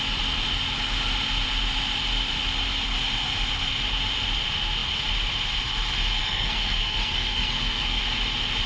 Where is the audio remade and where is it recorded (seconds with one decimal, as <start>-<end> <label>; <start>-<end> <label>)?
0.0-6.2 recorded; 6.2-8.0 remade; 8.0-8.7 recorded